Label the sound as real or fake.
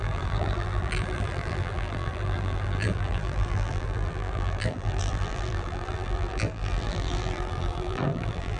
fake